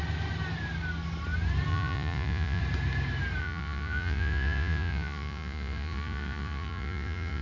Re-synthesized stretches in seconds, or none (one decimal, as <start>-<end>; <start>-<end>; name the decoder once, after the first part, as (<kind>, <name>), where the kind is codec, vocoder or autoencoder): 1.7-2.6 (vocoder, Vocos); 3.4-7.4